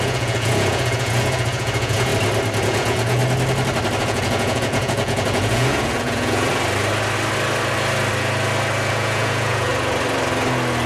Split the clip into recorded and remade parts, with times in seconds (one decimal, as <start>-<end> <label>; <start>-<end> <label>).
0.0-2.1 remade; 2.1-2.6 recorded; 2.6-3.2 remade; 3.2-4.0 recorded; 4.0-6.5 remade; 6.5-8.9 recorded; 8.9-9.7 remade; 9.7-10.9 recorded